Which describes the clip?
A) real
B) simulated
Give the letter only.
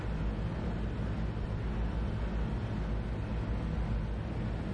A